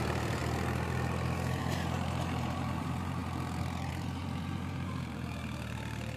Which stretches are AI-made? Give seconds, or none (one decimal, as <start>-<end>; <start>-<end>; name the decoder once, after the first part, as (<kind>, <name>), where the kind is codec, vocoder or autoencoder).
0.0-0.4 (vocoder, BigVGAN v2); 1.6-6.2